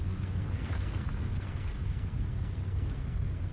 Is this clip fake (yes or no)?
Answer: yes